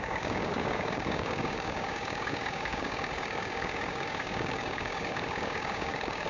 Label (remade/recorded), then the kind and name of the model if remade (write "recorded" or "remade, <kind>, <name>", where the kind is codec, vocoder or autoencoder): remade, codec, DAC